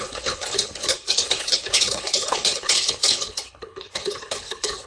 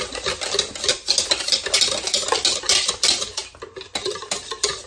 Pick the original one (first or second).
second